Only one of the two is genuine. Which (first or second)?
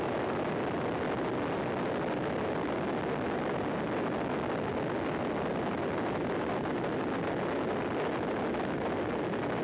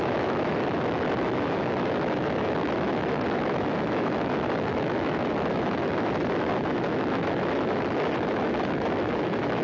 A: first